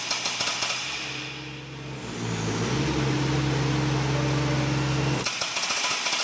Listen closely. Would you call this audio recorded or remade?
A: recorded